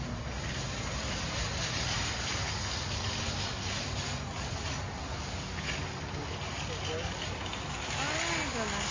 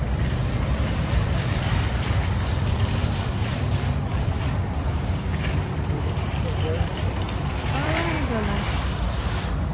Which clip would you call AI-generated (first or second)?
second